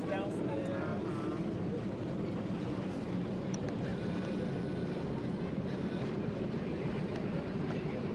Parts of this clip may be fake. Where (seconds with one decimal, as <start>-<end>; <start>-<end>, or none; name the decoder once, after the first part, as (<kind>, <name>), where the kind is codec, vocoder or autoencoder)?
0.0-0.9 (vocoder, BigVGAN v2); 2.5-3.9; 6.4-8.1